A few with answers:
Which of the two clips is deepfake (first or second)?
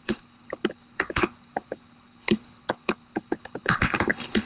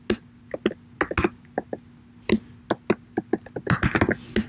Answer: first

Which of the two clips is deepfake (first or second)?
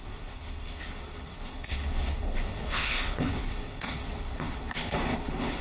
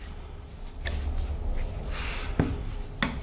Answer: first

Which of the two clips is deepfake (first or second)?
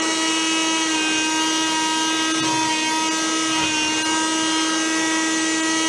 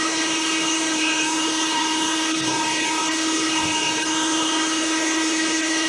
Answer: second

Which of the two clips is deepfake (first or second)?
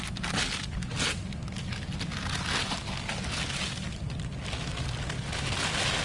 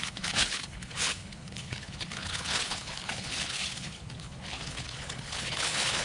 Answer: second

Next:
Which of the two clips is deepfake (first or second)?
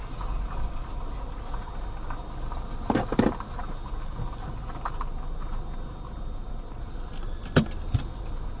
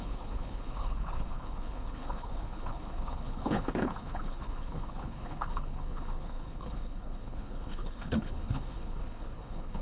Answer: second